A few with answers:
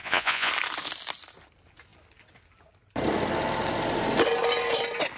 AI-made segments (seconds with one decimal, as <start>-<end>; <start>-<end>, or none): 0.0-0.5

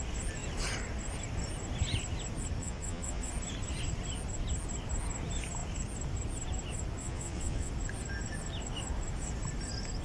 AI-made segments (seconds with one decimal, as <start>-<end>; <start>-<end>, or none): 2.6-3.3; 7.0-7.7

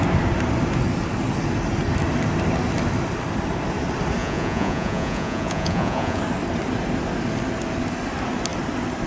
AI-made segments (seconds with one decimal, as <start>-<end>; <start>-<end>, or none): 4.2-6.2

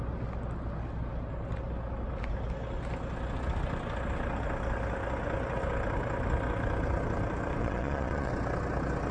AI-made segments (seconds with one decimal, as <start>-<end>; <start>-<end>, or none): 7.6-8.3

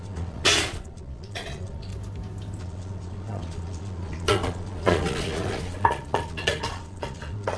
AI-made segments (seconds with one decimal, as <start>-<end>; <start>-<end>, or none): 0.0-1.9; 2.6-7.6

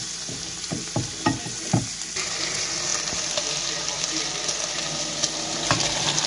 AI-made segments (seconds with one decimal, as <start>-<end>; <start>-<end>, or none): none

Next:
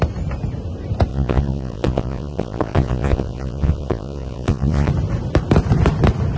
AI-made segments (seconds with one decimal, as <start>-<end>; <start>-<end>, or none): 1.1-4.9

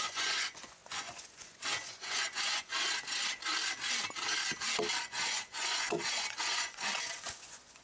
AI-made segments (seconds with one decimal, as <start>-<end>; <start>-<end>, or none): 0.0-2.7; 5.0-7.8